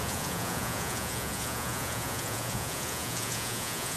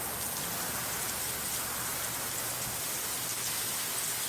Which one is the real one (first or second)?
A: second